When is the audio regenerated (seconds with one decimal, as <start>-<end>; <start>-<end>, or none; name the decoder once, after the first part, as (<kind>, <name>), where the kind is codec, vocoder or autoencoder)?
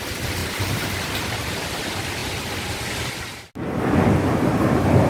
0.4-0.9 (vocoder, BigVGAN v2)